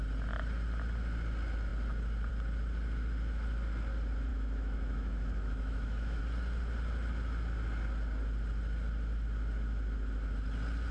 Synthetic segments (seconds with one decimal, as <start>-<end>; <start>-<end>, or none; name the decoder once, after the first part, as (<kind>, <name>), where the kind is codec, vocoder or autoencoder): 4.3-6.2 (autoencoder, DAC-VAE)